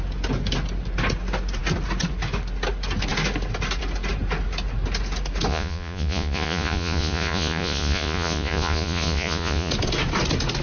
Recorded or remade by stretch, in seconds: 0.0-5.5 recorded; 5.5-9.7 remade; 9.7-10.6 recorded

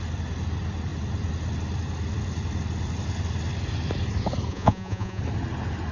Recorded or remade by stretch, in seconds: 0.0-4.5 recorded; 4.5-5.2 remade; 5.2-5.9 recorded